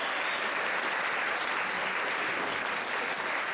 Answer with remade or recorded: recorded